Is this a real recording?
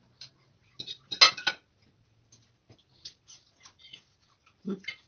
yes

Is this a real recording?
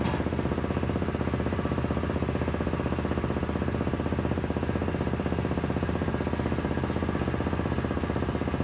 yes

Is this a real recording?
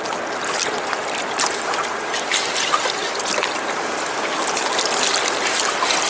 yes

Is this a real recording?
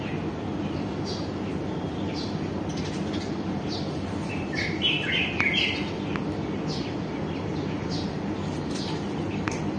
yes